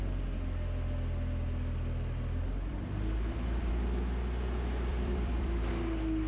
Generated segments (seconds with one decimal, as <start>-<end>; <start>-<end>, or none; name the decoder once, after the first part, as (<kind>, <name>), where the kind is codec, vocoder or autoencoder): 2.7-3.7 (vocoder, BigVGAN v2); 4.9-5.7

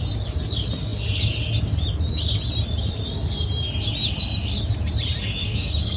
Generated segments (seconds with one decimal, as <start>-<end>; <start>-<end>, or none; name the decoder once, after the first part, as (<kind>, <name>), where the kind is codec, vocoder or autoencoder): 5.4-6.0 (codec, DAC)

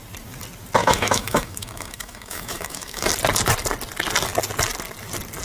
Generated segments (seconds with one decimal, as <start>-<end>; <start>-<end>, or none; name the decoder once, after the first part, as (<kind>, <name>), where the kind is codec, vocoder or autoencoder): 0.8-3.1 (autoencoder, DAC-VAE)

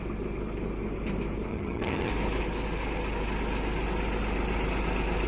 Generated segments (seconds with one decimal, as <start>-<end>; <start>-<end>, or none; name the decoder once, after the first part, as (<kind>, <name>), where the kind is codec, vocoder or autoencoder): 1.5-2.1 (vocoder, HiFi-GAN)

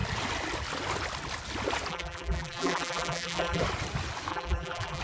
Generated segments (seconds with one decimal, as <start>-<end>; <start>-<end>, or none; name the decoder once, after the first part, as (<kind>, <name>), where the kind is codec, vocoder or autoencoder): 1.9-3.6 (vocoder, BigVGAN v2); 4.3-5.0